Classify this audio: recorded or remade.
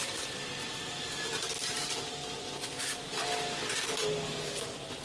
recorded